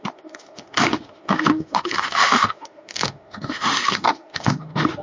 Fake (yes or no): yes